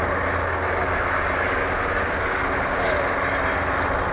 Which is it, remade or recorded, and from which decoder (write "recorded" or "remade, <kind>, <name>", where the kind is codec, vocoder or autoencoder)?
recorded